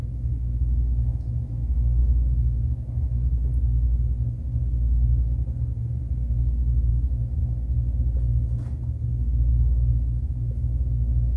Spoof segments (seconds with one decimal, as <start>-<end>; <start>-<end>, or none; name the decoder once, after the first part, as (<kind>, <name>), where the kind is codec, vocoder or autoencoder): 0.0-3.5 (autoencoder, DAC-VAE); 6.9-7.4; 9.5-11.4

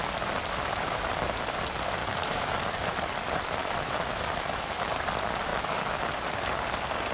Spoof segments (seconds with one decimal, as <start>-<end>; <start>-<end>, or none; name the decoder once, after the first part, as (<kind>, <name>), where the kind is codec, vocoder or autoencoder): 2.0-2.6 (autoencoder, DAC-VAE); 3.6-4.9; 5.5-6.0

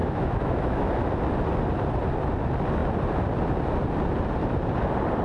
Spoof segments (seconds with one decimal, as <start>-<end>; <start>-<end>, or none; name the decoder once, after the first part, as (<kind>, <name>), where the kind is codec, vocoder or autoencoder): 0.0-0.9 (autoencoder, DAC-VAE)

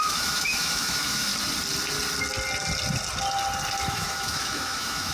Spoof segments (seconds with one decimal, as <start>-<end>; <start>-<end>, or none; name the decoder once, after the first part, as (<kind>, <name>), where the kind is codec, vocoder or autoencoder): 0.0-1.3 (autoencoder, DAC-VAE); 3.9-5.1

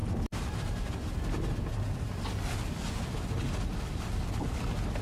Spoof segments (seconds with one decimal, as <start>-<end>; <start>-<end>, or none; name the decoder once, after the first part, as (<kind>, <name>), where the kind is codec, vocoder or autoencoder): none

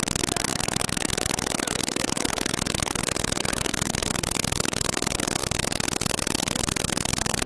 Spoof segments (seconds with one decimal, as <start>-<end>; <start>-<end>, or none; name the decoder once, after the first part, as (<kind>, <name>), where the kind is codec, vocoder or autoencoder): 0.5-5.0 (autoencoder, DAC-VAE)

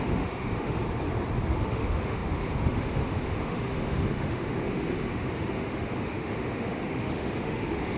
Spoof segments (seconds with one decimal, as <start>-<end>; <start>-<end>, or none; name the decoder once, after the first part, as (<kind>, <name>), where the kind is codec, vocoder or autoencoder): 0.0-0.8 (autoencoder, DAC-VAE); 1.6-8.0